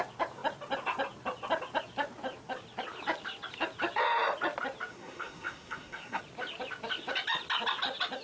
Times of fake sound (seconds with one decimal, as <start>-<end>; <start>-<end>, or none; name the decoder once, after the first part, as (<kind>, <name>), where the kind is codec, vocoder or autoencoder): 4.9-6.2 (codec, SNAC)